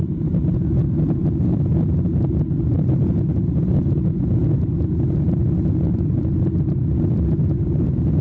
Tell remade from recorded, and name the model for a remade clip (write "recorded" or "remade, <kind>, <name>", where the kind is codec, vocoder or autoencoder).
recorded